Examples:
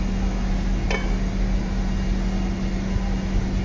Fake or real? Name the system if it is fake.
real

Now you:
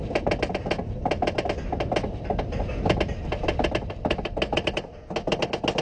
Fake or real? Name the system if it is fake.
real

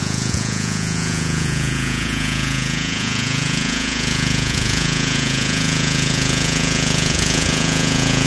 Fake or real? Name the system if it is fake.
fake, vocoder, Vocos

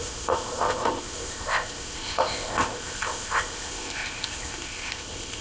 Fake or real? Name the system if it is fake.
fake, codec, ZipCodec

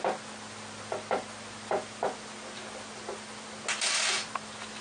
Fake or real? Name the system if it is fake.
real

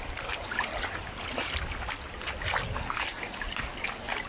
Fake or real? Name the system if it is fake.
real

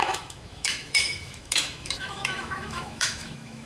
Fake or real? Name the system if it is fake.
fake, autoencoder, DAC-VAE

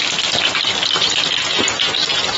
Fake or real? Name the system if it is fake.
real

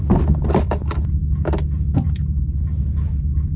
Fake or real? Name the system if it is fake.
real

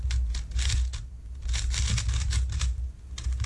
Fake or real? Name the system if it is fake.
real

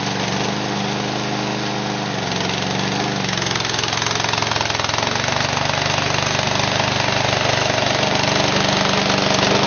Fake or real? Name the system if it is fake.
real